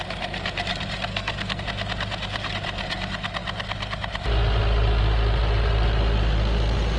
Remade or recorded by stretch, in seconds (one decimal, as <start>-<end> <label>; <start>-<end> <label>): 0.0-1.1 recorded; 1.1-1.6 remade; 1.6-7.0 recorded